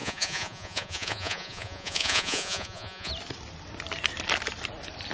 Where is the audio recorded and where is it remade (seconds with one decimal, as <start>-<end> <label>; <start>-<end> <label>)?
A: 0.0-3.1 remade; 3.1-5.1 recorded